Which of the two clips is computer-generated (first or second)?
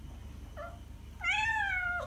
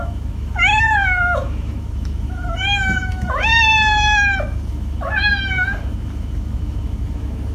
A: second